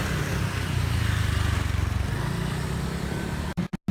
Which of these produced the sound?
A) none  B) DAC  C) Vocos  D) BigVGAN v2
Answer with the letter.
A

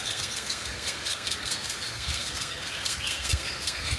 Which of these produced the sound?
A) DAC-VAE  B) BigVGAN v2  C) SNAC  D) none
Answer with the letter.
C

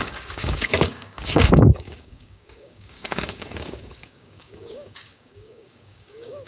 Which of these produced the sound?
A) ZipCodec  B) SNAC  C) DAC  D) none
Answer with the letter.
C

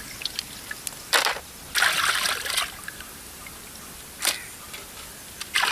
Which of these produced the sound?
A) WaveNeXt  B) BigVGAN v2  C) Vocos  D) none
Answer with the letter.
D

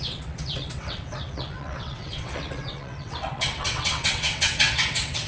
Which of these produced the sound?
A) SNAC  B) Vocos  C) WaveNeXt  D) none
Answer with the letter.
C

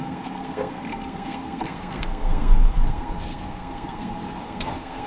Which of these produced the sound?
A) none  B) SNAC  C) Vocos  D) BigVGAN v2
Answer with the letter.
B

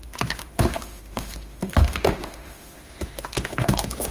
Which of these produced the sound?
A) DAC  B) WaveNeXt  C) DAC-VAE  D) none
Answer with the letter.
C